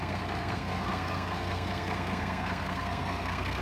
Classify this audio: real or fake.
fake